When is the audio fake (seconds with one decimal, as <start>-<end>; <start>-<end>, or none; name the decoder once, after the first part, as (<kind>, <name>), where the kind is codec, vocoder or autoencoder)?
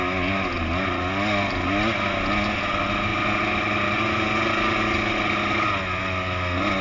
none